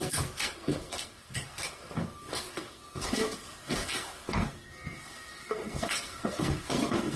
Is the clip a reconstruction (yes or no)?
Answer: yes